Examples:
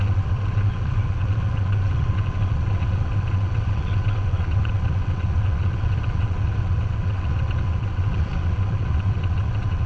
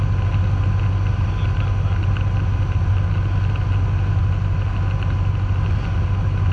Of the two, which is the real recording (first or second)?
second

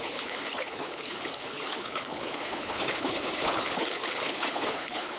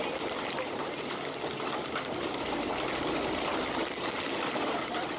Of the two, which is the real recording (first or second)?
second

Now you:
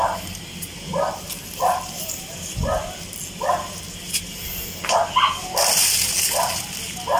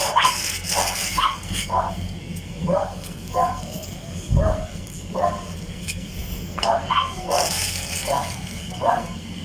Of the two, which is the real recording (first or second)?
first